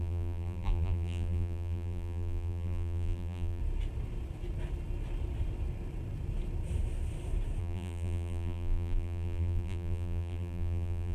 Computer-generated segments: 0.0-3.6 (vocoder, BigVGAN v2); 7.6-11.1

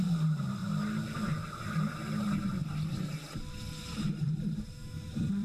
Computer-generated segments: 0.0-0.6 (vocoder, BigVGAN v2); 3.8-5.4